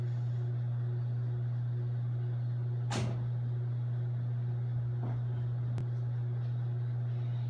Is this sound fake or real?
real